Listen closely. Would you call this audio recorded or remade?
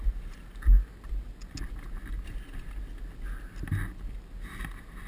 recorded